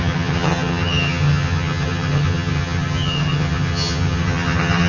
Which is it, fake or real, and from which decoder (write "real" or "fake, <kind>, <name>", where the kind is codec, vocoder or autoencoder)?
fake, vocoder, HiFi-GAN